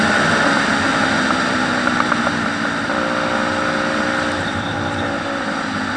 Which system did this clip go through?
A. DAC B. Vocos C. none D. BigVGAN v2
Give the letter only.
C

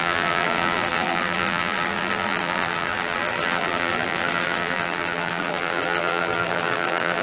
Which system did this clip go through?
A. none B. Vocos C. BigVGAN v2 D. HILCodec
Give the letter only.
C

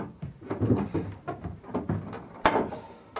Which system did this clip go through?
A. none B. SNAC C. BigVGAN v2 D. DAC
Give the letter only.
A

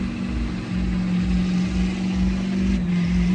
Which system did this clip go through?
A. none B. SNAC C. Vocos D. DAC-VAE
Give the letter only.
A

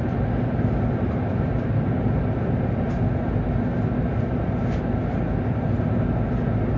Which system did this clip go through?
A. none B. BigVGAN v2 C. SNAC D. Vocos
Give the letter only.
A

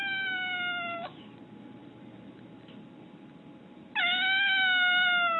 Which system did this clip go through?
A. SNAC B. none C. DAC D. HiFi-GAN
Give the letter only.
B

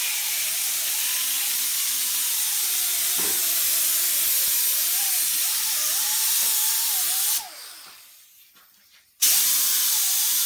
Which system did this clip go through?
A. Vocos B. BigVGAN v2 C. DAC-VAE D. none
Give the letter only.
D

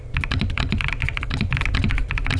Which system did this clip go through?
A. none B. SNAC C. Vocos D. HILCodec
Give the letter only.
A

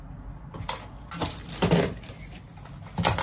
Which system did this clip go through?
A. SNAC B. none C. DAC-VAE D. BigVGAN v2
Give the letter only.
B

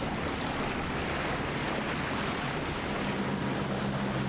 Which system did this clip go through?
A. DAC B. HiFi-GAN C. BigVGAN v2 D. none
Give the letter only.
D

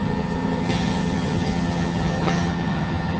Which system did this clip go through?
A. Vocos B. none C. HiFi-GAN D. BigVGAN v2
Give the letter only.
C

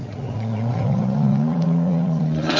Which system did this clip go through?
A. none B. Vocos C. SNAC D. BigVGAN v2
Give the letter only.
B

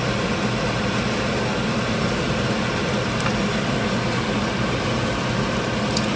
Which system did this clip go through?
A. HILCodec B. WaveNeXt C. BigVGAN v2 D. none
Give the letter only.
D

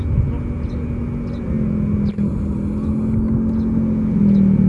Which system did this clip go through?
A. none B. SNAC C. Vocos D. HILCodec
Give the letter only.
A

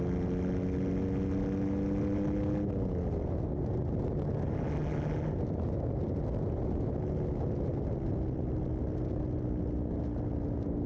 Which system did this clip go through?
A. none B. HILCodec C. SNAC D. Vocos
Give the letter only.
A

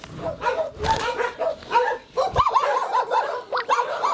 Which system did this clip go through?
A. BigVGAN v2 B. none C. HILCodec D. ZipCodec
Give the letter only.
A